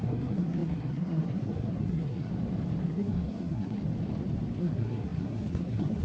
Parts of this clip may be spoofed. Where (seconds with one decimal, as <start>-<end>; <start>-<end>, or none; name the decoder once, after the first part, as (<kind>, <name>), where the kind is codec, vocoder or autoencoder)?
0.0-2.3 (codec, SNAC); 2.8-3.8; 4.6-6.0